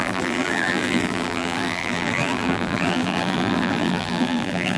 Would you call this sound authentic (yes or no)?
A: no